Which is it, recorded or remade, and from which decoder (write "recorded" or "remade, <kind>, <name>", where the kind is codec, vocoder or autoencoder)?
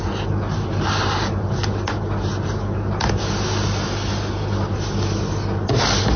recorded